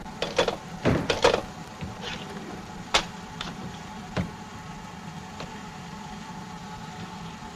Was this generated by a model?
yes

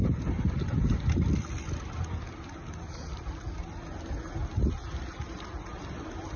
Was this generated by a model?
no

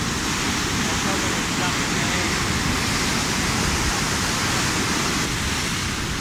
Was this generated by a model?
no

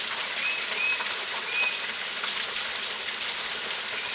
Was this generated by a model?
no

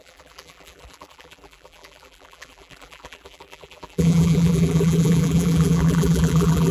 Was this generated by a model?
yes